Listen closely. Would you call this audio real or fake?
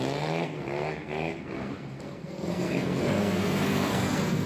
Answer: fake